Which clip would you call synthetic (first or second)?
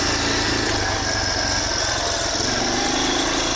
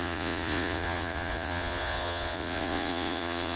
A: second